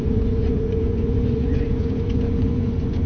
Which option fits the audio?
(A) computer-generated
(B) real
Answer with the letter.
A